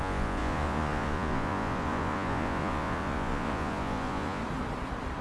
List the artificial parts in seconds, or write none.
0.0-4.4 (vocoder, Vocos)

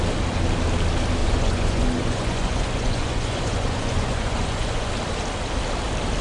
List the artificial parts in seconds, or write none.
1.2-4.9 (vocoder, Vocos)